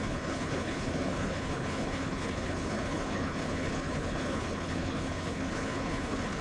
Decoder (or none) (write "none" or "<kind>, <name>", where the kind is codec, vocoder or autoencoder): codec, HILCodec